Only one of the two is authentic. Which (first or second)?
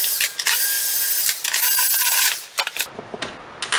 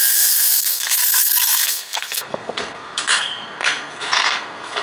first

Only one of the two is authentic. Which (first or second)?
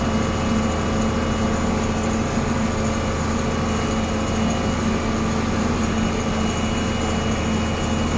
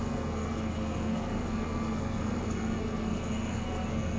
first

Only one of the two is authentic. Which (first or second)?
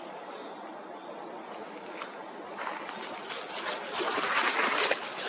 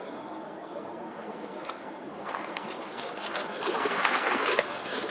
first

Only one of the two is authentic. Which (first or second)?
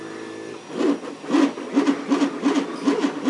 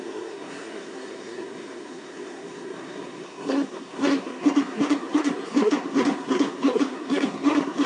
first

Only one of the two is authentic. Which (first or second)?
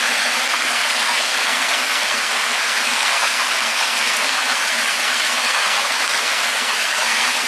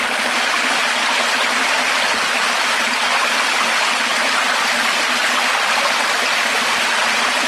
second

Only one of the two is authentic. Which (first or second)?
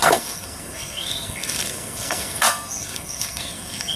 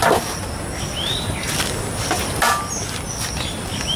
second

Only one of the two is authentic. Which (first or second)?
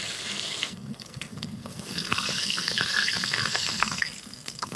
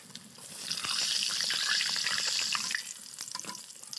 second